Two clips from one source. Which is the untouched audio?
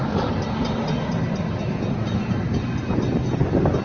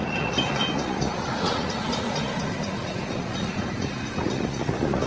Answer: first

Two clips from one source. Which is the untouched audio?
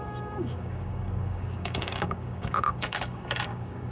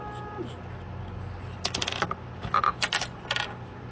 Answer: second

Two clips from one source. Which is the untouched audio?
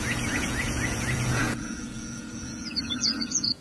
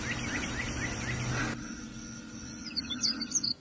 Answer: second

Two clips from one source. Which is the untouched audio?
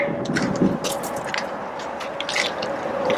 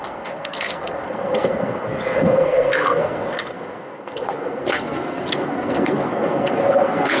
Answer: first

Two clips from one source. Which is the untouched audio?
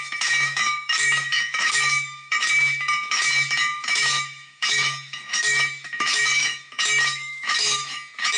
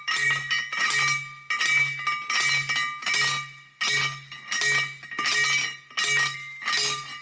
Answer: second